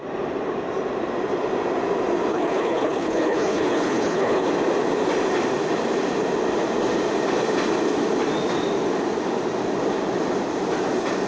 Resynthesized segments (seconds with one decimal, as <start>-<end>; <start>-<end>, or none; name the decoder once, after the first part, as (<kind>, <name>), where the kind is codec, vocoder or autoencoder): 2.3-4.5 (codec, HILCodec)